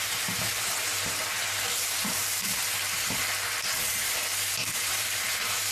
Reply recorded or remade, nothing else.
remade